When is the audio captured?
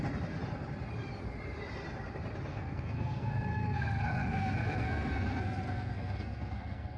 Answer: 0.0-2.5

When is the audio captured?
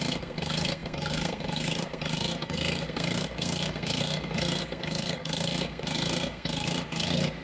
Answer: none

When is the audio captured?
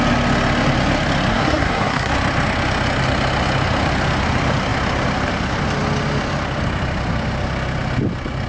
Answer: 0.0-1.3; 2.1-8.5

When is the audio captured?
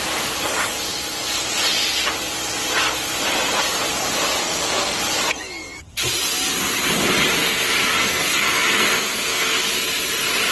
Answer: 0.0-4.4; 5.0-7.4; 9.7-10.5